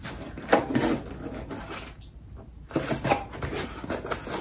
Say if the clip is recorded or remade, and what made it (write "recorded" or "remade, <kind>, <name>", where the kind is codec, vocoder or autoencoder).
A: recorded